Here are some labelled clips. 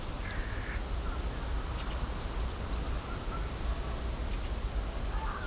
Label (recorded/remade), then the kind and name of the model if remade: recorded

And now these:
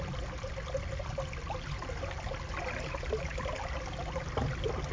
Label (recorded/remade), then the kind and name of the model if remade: recorded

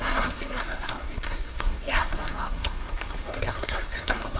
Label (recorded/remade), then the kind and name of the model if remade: remade, codec, SNAC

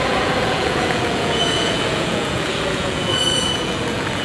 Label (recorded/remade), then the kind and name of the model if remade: remade, vocoder, Vocos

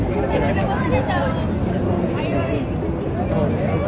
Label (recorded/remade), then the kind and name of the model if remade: recorded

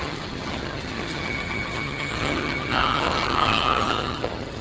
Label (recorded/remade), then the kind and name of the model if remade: remade, vocoder, HiFi-GAN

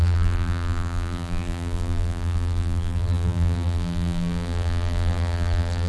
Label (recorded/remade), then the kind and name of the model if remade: remade, vocoder, BigVGAN v2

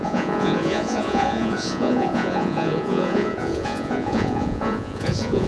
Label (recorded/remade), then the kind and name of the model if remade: remade, vocoder, Vocos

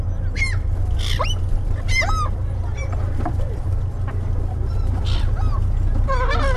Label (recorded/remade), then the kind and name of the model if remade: recorded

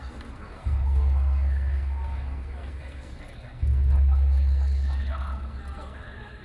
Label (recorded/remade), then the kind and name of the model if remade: remade, codec, SNAC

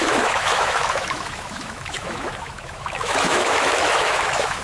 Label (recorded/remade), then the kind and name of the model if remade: remade, autoencoder, DAC-VAE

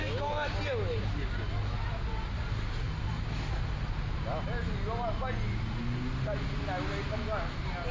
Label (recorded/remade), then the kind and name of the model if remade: recorded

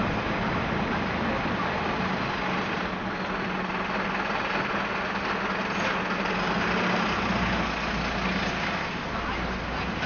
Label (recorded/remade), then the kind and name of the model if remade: recorded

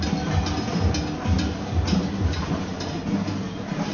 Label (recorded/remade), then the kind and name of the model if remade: recorded